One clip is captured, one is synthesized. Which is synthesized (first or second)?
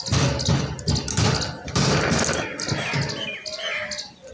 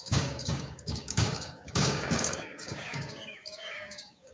second